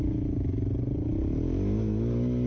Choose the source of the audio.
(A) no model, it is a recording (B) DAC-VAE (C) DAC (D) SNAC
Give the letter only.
A